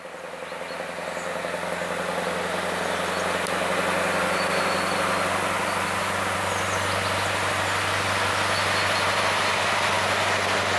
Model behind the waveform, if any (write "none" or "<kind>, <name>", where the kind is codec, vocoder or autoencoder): none